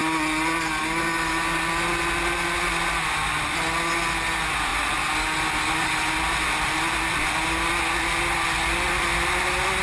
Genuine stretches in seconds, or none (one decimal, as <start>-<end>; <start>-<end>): 0.0-9.8